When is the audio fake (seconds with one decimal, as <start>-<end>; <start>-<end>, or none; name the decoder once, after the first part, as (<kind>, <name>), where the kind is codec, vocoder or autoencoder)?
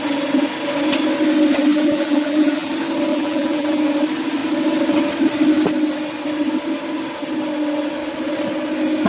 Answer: 1.7-2.7 (vocoder, BigVGAN v2); 3.1-3.8